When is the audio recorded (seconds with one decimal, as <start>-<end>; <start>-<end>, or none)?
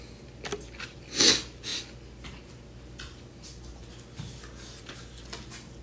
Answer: 0.0-5.8